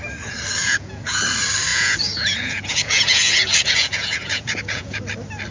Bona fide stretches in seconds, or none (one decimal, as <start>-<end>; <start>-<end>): 0.0-0.6; 1.2-1.7; 5.0-5.5